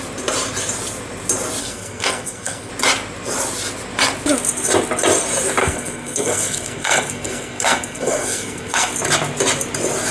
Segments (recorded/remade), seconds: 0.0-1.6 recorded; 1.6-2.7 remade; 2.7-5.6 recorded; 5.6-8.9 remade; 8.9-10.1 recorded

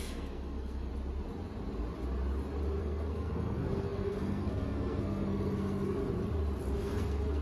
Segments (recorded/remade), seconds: 0.0-0.9 remade; 0.9-2.8 recorded; 2.8-6.0 remade; 6.0-6.8 recorded; 6.8-7.4 remade

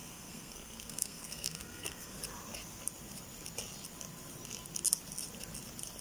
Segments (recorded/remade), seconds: 0.0-2.2 remade; 2.2-6.0 recorded

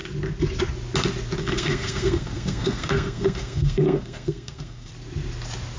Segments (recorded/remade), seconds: 0.0-1.4 recorded; 1.4-4.9 remade; 4.9-5.8 recorded